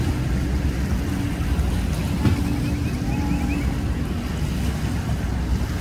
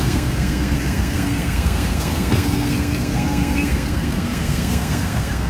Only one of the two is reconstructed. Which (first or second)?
second